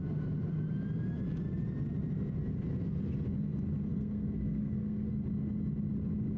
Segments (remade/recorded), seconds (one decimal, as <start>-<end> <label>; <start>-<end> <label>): 0.0-3.9 recorded; 3.9-5.1 remade; 5.1-6.4 recorded